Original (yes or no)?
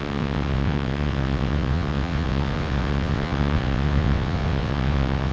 no